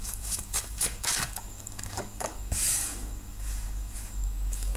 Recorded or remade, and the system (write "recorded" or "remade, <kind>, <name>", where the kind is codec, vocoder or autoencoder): remade, codec, DAC